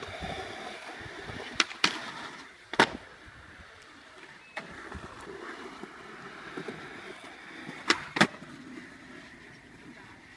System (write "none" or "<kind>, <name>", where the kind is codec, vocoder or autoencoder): vocoder, BigVGAN v2